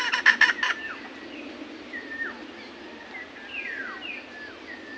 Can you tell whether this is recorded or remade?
recorded